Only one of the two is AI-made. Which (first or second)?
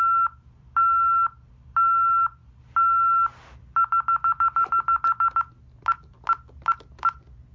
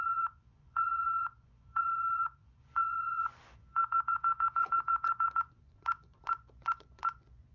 second